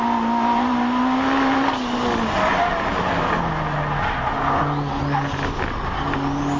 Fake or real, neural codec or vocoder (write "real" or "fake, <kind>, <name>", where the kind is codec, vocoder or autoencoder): real